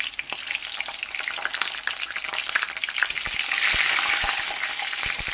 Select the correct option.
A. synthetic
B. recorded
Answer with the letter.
A